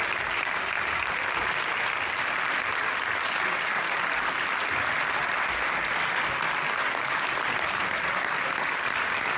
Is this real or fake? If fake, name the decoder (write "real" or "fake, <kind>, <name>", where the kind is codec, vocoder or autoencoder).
real